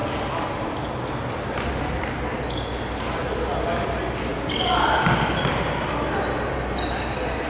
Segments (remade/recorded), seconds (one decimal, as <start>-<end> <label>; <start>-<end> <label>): 0.0-4.3 recorded; 4.3-5.6 remade; 5.6-7.5 recorded